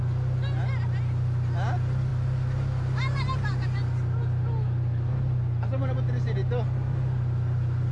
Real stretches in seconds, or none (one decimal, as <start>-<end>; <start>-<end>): 0.0-7.9